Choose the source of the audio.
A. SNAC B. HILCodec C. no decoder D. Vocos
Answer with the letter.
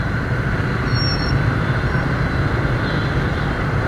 C